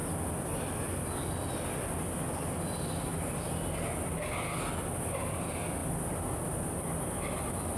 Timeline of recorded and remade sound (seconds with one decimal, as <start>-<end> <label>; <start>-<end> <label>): 0.0-7.8 recorded